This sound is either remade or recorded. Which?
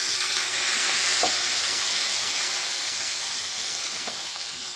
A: remade